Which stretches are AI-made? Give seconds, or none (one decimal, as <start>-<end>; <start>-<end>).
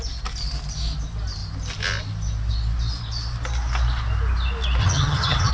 4.8-5.5